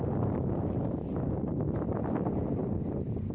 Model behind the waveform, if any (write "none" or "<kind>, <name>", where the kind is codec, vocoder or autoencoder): none